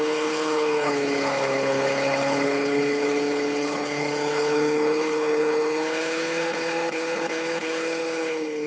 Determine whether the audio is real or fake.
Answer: fake